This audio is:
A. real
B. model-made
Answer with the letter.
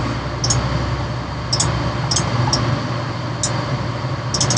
A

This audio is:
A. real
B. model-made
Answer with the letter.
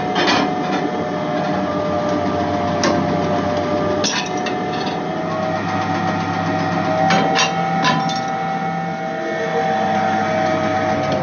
A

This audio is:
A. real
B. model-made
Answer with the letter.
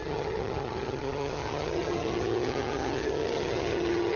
B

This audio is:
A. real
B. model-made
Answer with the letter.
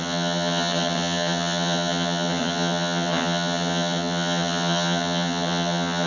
B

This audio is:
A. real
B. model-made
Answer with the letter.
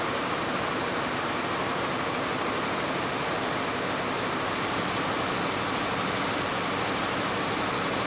A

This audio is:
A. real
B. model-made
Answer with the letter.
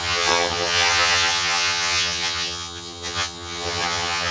B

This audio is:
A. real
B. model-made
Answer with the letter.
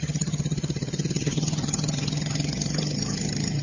B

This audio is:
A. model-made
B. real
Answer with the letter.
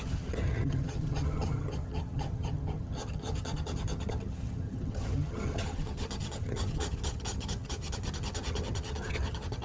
A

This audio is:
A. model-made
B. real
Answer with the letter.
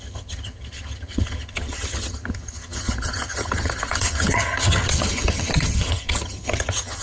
A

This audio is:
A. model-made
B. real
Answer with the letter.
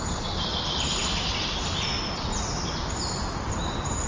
B